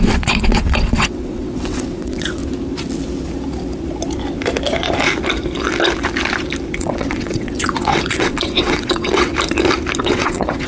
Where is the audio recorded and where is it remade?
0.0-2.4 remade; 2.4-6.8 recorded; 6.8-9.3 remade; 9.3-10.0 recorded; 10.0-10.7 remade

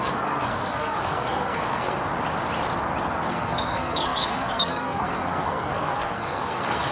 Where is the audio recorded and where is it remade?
0.0-2.0 remade; 2.0-3.3 recorded; 3.3-6.9 remade

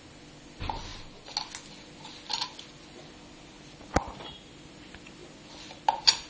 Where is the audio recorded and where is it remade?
0.0-6.3 recorded

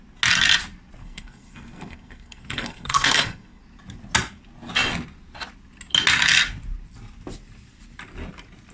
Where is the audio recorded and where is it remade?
0.0-1.0 recorded; 1.0-3.6 remade; 3.6-8.7 recorded